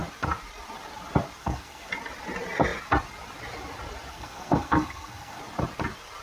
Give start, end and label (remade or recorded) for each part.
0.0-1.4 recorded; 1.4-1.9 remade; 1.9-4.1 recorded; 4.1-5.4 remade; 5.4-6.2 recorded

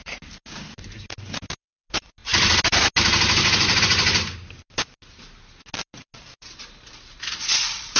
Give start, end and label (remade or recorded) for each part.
0.0-8.0 recorded

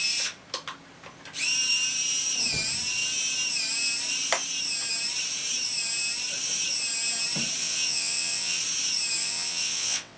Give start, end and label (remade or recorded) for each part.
0.0-7.6 recorded; 7.6-8.6 remade; 8.6-9.2 recorded; 9.2-10.2 remade

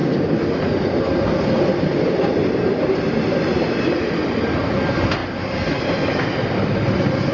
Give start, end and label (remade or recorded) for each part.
0.0-7.3 recorded